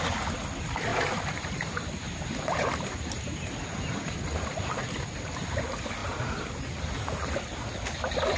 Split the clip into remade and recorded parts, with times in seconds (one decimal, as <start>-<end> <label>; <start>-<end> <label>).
0.0-0.9 recorded; 0.9-4.8 remade; 4.8-8.4 recorded